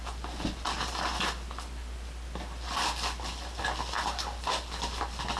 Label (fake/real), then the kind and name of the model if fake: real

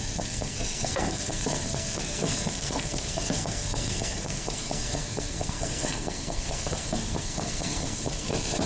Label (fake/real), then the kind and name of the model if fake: fake, codec, SNAC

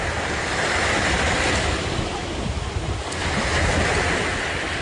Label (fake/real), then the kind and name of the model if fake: real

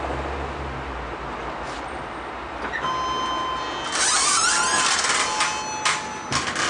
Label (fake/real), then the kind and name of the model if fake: real